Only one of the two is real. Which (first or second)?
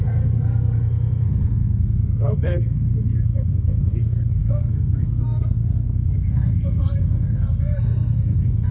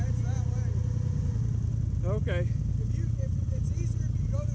second